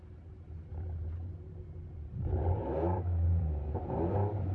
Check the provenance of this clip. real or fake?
fake